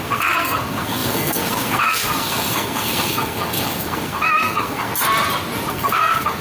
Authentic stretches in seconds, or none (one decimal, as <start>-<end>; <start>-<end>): 4.9-5.7